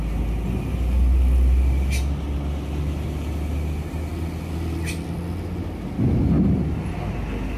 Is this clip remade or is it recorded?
recorded